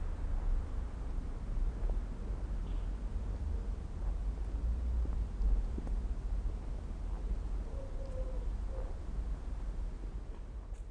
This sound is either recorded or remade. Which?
recorded